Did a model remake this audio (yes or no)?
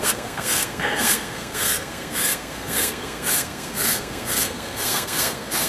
yes